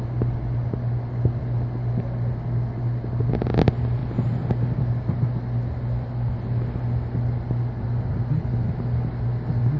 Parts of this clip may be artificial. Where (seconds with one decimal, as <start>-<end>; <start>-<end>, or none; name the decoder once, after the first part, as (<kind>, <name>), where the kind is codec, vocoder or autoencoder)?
none